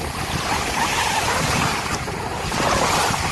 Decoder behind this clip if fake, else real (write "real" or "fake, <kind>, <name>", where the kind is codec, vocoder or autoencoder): fake, vocoder, BigVGAN v2